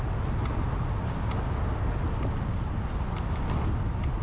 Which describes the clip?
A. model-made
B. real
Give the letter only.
B